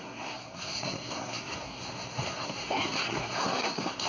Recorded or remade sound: remade